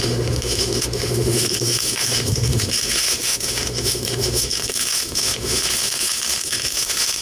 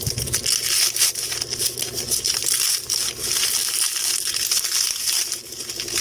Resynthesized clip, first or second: first